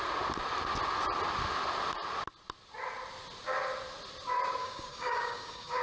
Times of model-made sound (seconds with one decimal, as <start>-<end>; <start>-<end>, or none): 4.6-5.8